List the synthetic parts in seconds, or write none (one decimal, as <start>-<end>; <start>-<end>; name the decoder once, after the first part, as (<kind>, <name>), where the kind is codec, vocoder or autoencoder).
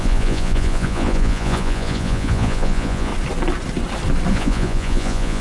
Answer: 0.0-3.1 (vocoder, Vocos); 4.3-5.4